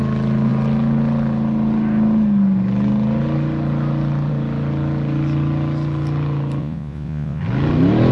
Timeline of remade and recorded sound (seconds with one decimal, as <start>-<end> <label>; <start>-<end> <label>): 0.0-6.6 recorded; 6.6-7.4 remade; 7.4-8.1 recorded